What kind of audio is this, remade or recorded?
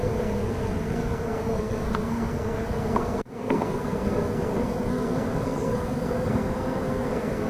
remade